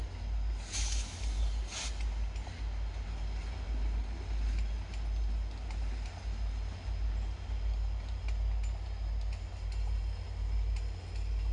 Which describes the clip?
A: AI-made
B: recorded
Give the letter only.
B